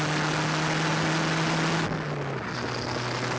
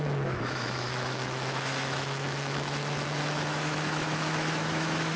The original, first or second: first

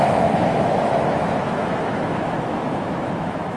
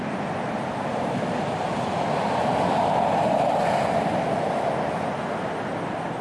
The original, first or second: second